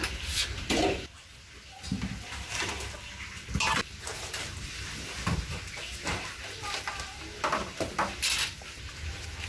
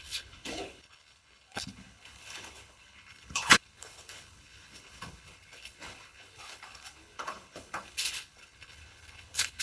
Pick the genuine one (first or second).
first